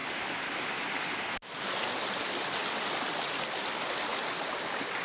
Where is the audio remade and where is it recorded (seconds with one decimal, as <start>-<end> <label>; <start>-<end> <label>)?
0.0-5.0 recorded